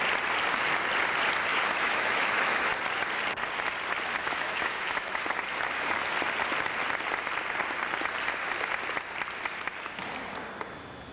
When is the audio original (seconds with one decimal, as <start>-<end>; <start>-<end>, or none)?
0.0-1.5; 2.7-4.2; 5.2-11.1